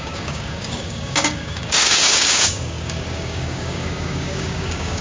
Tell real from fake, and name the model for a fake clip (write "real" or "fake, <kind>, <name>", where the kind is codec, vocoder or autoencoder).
fake, codec, DAC